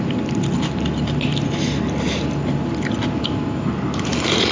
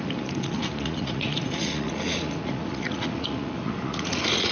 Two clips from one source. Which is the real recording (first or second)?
first